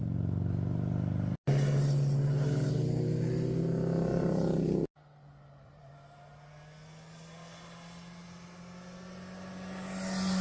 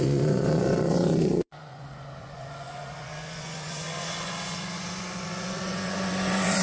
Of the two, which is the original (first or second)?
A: first